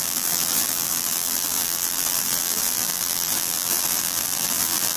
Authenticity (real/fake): fake